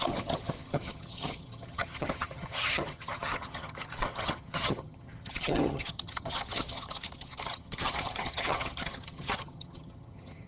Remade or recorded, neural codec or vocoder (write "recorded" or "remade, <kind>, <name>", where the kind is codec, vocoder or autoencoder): remade, vocoder, HiFi-GAN